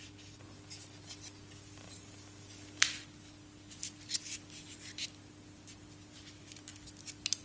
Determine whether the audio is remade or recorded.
recorded